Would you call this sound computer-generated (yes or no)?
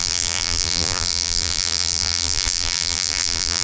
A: yes